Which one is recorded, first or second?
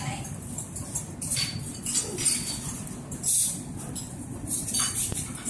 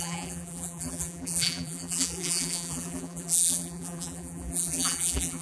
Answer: first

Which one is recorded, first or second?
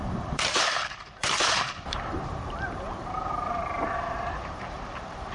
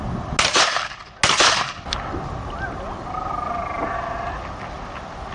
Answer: second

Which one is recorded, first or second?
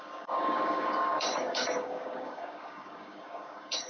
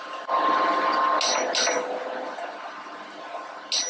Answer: second